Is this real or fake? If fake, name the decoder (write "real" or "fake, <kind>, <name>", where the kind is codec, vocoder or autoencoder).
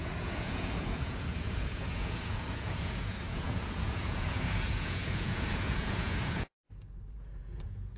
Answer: fake, vocoder, Vocos